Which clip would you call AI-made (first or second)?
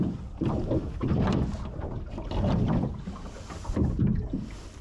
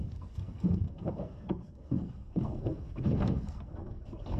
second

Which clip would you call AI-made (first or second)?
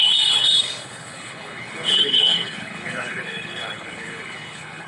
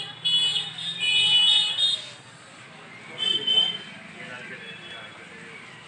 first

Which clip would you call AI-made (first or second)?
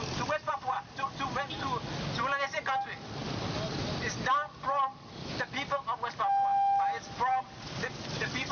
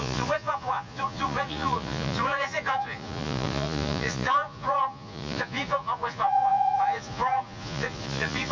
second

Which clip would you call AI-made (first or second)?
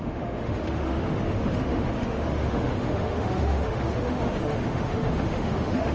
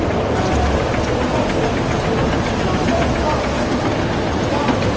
first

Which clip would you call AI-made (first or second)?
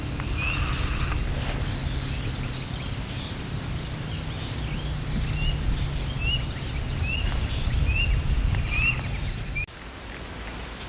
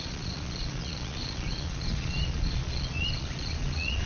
second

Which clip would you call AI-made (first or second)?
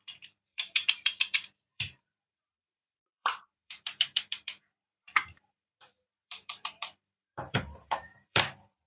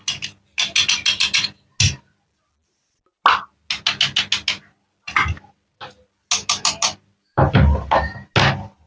first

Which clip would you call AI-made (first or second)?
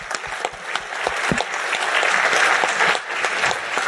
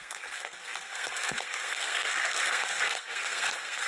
second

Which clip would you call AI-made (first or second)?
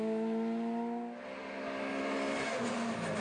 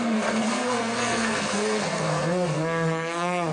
second